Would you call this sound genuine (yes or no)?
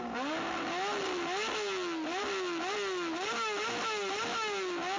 yes